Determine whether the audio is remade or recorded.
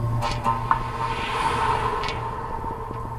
recorded